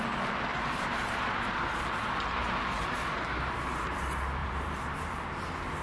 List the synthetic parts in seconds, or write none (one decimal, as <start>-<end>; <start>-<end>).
0.5-4.0; 4.4-5.0

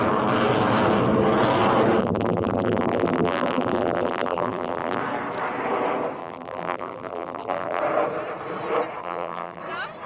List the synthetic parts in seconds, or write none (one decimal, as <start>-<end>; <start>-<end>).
2.0-5.0; 6.2-7.8; 9.0-9.6

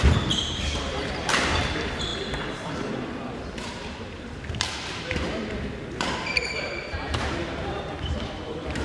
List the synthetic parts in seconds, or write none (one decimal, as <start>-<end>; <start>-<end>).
0.0-8.8

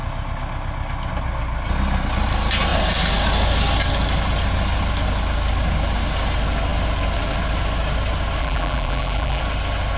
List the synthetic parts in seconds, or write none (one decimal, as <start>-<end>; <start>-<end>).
8.4-9.4